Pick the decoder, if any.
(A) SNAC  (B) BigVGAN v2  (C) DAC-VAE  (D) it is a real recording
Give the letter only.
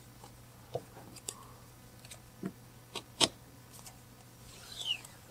B